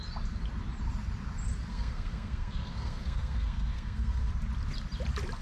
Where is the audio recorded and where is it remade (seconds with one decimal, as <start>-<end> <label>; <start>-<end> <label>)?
0.0-1.7 recorded; 1.7-4.3 remade; 4.3-5.4 recorded